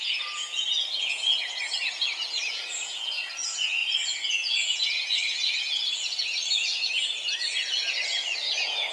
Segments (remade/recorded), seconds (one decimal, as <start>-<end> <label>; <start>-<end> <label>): 0.0-8.9 remade